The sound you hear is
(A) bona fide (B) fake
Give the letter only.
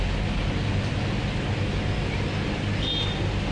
A